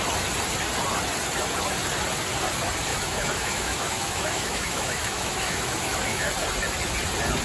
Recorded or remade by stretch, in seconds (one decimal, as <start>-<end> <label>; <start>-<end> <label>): 0.0-2.9 recorded; 2.9-6.3 remade; 6.3-7.4 recorded